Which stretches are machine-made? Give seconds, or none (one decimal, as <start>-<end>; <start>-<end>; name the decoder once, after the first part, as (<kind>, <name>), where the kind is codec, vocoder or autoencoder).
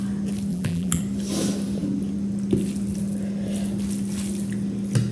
0.5-1.0 (vocoder, BigVGAN v2)